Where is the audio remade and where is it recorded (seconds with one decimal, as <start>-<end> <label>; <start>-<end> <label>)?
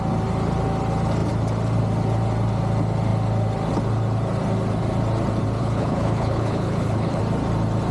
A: 0.0-5.6 recorded; 5.6-7.2 remade; 7.2-7.9 recorded